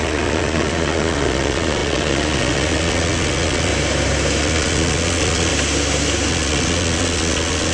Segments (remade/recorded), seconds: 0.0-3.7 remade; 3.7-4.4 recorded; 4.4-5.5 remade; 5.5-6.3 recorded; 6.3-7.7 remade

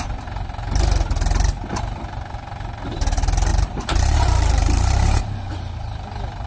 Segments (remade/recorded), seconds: 0.0-3.5 recorded; 3.5-5.2 remade; 5.2-6.5 recorded

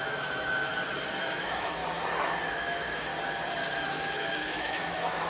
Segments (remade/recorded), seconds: 0.0-0.7 remade; 0.7-1.2 recorded; 1.2-1.8 remade; 1.8-2.5 recorded; 2.5-3.1 remade; 3.1-3.7 recorded; 3.7-5.3 remade

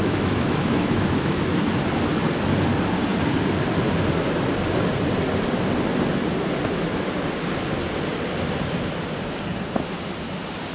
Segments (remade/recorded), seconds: 0.0-1.6 remade; 1.6-10.7 recorded

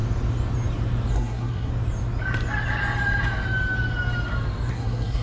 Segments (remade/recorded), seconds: 0.0-1.1 recorded; 1.1-1.7 remade; 1.7-4.7 recorded; 4.7-5.2 remade

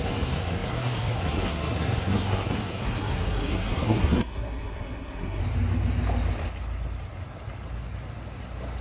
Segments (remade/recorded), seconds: 0.0-5.4 remade; 5.4-8.8 recorded